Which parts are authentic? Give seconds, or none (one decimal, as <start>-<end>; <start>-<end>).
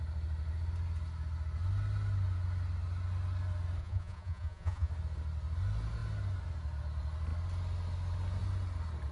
0.0-3.8; 4.9-9.1